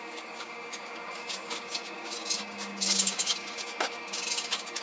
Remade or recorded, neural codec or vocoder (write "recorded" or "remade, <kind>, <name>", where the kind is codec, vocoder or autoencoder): remade, codec, DAC